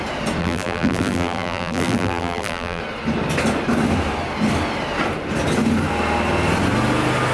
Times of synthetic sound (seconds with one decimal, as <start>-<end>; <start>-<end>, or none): 0.4-2.8